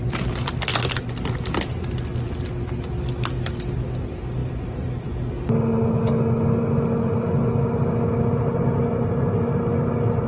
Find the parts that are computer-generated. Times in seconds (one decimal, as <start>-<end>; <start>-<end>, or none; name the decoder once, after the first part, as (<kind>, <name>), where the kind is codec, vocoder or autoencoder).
none